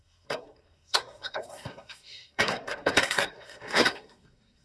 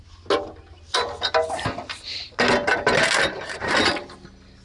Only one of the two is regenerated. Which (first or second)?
first